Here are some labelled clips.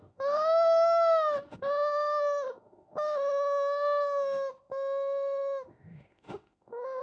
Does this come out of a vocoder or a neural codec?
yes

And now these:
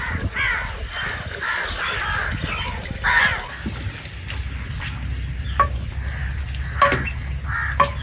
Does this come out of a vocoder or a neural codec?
no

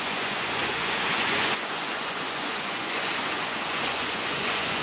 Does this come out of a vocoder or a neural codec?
yes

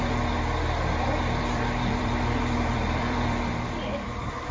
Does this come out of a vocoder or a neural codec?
yes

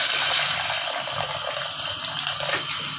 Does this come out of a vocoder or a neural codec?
no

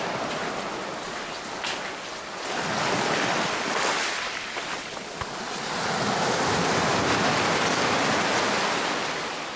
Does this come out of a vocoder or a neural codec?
no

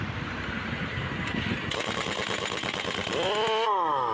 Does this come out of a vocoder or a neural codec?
no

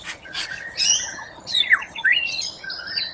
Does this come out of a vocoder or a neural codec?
yes